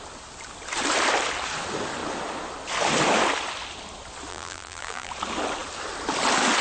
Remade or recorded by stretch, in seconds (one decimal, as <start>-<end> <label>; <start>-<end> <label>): 0.0-4.3 recorded; 4.3-5.1 remade; 5.1-6.6 recorded